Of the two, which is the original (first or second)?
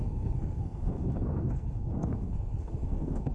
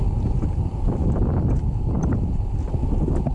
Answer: second